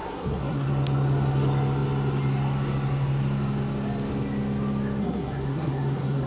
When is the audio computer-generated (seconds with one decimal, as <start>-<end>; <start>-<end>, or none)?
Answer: 0.0-0.7; 5.0-6.3